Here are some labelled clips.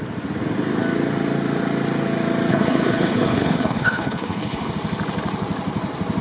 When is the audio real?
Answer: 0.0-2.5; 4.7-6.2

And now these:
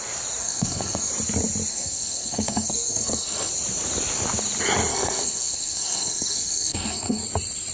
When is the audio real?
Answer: 0.0-0.4; 1.1-1.7; 3.5-4.9; 7.2-7.7

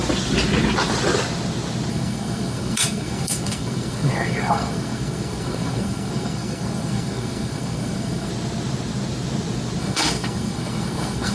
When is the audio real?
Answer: 0.0-1.9; 8.3-9.8